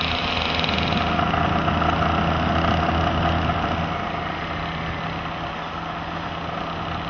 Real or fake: real